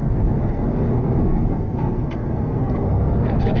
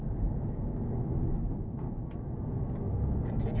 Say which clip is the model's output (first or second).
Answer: first